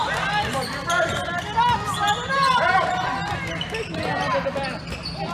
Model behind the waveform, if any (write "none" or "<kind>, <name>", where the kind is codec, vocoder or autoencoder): none